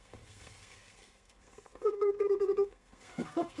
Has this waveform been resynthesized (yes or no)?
yes